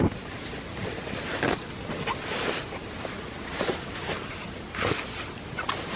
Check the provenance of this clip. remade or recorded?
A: recorded